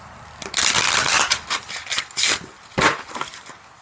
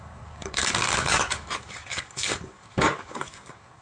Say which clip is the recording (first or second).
first